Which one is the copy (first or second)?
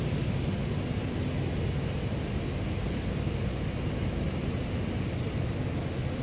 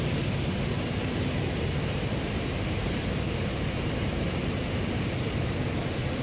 second